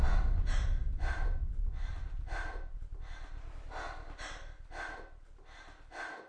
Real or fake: real